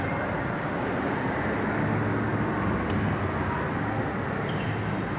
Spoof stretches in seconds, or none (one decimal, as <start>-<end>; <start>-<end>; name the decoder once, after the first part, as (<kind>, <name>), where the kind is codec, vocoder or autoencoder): none